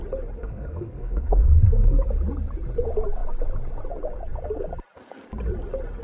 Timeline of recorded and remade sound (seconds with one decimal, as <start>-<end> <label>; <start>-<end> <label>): 0.0-0.4 recorded; 0.4-2.1 remade; 2.1-6.0 recorded